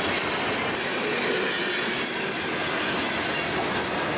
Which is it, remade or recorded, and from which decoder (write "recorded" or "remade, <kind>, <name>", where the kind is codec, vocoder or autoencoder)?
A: recorded